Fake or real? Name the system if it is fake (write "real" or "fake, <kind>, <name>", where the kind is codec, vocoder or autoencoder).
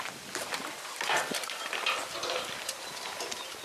real